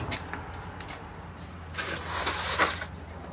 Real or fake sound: real